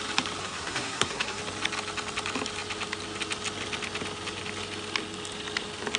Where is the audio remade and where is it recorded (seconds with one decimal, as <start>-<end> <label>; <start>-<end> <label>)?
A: 0.0-0.4 recorded; 0.4-1.4 remade; 1.4-6.0 recorded